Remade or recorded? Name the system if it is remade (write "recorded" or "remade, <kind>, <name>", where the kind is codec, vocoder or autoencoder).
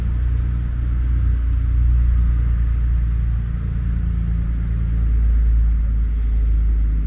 recorded